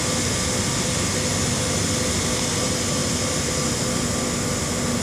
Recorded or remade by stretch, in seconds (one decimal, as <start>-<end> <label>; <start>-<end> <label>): 0.0-5.0 recorded